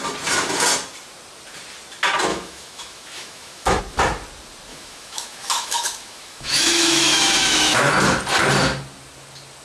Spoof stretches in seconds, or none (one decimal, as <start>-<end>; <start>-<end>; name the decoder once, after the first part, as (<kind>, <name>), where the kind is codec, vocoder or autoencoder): 2.3-3.8 (autoencoder, DAC-VAE); 4.7-7.9